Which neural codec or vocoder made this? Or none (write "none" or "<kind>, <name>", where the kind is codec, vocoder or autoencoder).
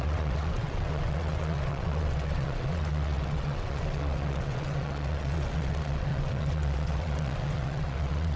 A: vocoder, WaveNeXt